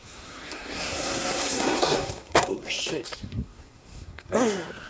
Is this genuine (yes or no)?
no